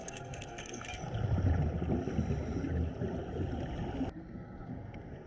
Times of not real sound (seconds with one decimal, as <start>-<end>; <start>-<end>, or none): 0.0-1.0; 4.2-5.3